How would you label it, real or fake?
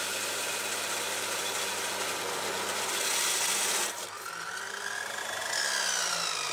fake